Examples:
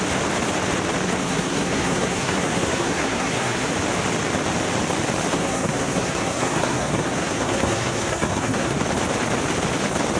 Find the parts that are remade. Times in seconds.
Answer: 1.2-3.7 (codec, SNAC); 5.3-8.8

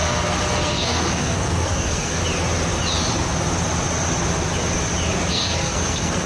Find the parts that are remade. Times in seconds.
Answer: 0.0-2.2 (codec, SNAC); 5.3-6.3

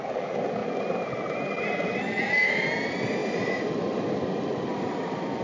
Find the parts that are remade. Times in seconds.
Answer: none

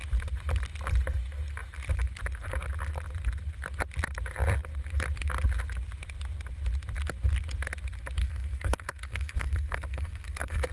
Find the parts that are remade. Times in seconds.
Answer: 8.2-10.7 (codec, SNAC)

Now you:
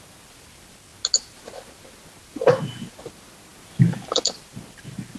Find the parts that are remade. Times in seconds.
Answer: none